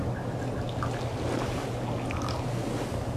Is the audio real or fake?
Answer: real